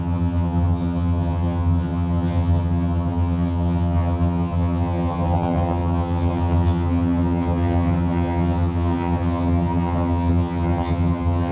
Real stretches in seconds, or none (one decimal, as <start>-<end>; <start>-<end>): none